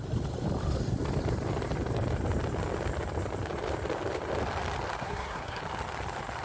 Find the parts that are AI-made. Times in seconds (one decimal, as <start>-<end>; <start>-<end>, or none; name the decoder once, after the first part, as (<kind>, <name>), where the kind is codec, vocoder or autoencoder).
5.0-5.6 (codec, SNAC)